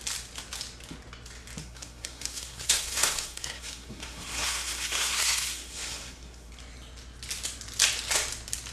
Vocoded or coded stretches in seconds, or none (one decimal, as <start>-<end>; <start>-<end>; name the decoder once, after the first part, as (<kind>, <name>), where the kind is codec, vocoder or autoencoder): 1.6-6.5 (codec, SNAC)